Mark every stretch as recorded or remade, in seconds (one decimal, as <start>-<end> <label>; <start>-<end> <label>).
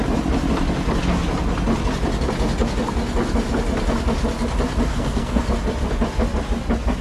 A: 0.0-4.9 recorded; 4.9-5.4 remade; 5.4-7.0 recorded